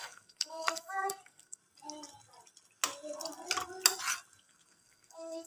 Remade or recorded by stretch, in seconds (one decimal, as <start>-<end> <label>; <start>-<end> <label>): 0.0-1.6 remade; 1.6-4.4 recorded; 4.4-5.5 remade